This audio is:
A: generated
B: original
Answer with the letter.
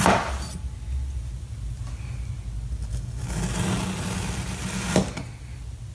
B